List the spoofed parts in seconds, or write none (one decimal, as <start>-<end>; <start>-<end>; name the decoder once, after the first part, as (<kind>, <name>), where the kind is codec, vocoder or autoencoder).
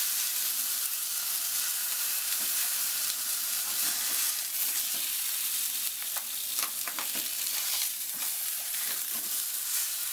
1.8-3.7 (vocoder, BigVGAN v2); 7.3-9.2